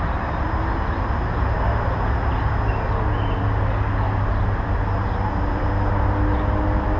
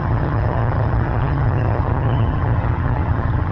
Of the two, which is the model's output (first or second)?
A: second